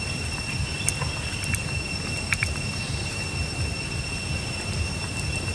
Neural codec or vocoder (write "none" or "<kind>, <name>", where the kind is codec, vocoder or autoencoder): none